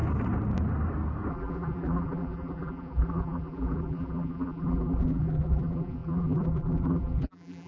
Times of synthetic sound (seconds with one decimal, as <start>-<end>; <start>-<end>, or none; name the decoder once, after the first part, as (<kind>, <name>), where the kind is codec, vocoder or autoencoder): 1.3-7.7 (vocoder, BigVGAN v2)